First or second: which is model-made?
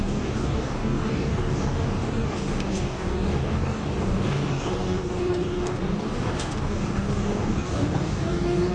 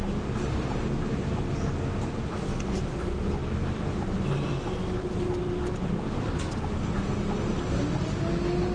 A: first